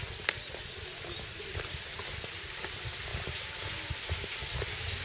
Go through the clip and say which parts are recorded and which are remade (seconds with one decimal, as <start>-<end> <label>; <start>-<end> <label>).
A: 0.0-5.0 recorded